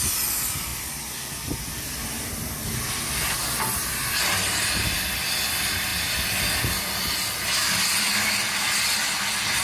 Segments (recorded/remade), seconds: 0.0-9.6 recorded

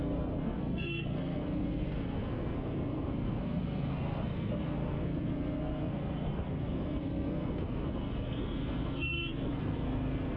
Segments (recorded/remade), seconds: 0.0-10.4 remade

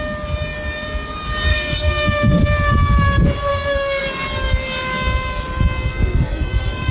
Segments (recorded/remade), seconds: 0.0-1.5 recorded; 1.5-2.4 remade; 2.4-3.5 recorded; 3.5-4.0 remade; 4.0-5.9 recorded; 5.9-6.9 remade

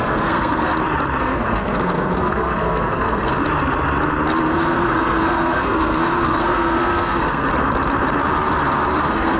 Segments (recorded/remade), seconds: 0.0-0.7 remade; 0.7-1.2 recorded; 1.2-3.4 remade; 3.4-4.4 recorded; 4.4-7.5 remade; 7.5-9.0 recorded; 9.0-9.4 remade

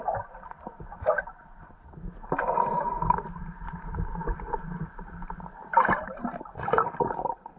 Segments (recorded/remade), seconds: 0.0-7.6 recorded